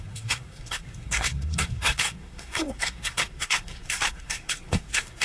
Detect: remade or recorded remade